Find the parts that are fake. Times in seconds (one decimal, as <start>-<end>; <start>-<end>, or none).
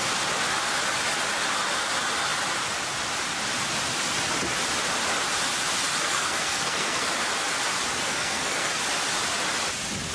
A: 6.0-7.1; 8.0-8.8